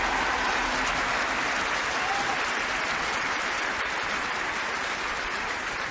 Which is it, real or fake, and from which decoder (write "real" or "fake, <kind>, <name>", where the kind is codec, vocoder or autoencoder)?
real